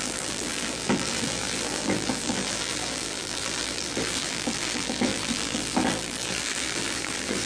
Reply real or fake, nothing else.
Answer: fake